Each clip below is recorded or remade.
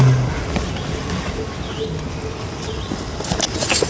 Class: recorded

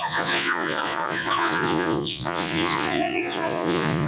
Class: remade